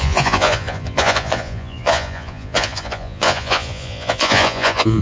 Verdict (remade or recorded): remade